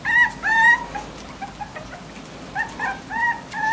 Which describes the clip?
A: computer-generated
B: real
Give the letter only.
B